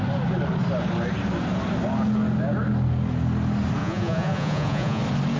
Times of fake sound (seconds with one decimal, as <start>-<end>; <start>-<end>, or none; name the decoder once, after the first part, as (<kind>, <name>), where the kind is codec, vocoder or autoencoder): 3.8-5.0 (vocoder, Vocos)